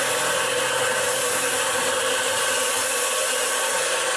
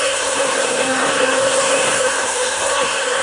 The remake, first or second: second